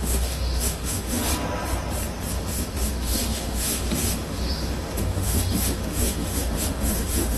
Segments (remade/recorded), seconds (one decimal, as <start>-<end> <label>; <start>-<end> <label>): 0.0-1.3 remade; 1.3-2.3 recorded; 2.3-7.4 remade